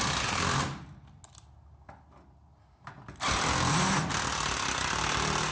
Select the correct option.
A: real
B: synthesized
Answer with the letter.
A